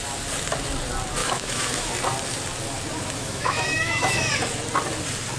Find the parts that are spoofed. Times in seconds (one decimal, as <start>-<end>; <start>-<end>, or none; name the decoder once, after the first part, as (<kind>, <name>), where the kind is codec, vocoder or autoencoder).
1.2-1.9 (autoencoder, DAC-VAE); 3.2-4.3